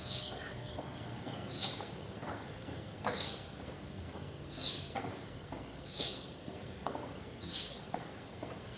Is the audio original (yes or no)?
no